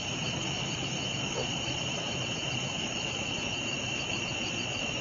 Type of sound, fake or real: fake